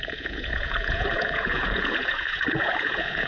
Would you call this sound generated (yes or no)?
yes